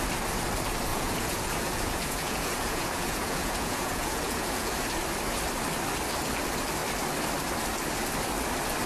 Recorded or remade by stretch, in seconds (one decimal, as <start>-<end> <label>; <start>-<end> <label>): 0.0-0.9 recorded; 0.9-4.7 remade; 4.7-8.9 recorded